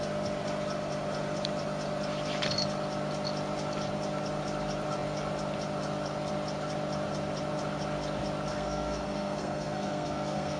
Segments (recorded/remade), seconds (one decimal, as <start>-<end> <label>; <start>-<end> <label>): 0.0-8.5 recorded; 8.5-10.6 remade